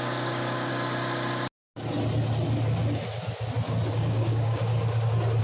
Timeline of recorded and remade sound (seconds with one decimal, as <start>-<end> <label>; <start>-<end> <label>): 0.0-0.7 remade; 0.7-3.9 recorded; 3.9-4.7 remade; 4.7-5.4 recorded